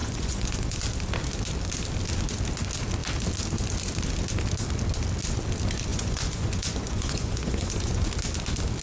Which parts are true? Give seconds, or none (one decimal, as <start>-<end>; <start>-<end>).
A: 0.8-5.9; 8.1-8.8